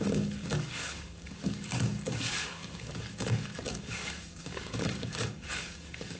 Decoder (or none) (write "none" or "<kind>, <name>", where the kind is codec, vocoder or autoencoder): codec, DAC